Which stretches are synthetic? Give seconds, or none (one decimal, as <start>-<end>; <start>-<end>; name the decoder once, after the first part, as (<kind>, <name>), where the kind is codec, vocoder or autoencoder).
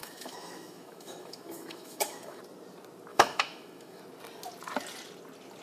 0.0-2.4 (autoencoder, DAC-VAE); 3.1-4.0